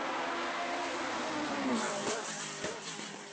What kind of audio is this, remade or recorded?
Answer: recorded